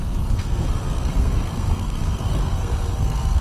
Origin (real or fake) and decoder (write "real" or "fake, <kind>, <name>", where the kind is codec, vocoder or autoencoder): fake, codec, SNAC